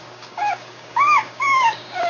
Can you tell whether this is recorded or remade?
remade